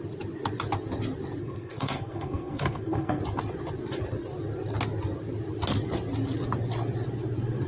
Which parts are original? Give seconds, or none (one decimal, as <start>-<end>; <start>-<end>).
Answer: 0.0-1.4; 3.2-7.7